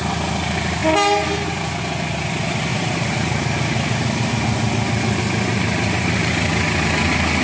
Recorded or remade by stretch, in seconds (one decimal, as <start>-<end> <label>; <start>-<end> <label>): 0.0-2.7 recorded; 2.7-4.3 remade; 4.3-5.5 recorded; 5.5-6.3 remade; 6.3-7.4 recorded